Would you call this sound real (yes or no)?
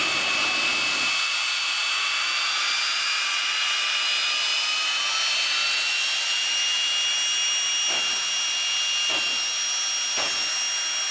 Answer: yes